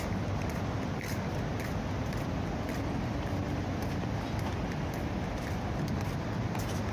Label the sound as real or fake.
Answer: real